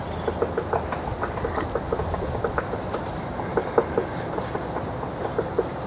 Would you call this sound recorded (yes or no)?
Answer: yes